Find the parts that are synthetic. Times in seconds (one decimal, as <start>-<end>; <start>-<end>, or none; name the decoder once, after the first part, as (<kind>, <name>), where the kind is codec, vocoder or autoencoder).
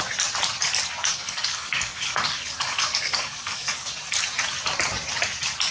1.0-3.9 (codec, DAC)